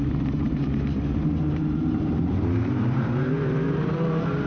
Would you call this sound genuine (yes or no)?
no